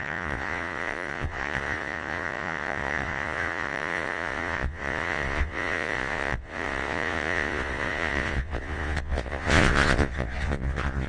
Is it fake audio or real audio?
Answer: fake